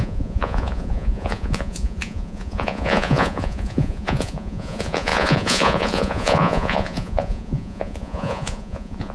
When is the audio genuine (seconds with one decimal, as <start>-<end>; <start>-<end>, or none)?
none